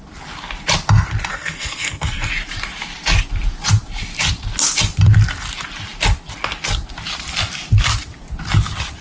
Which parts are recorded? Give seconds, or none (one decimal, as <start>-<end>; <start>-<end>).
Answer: 0.0-1.3; 2.3-9.0